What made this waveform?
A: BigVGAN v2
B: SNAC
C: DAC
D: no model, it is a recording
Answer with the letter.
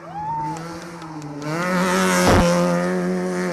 D